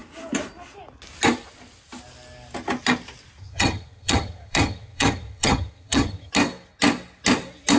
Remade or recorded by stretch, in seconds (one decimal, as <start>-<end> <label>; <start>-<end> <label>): 0.0-3.4 recorded; 3.4-6.3 remade; 6.3-7.8 recorded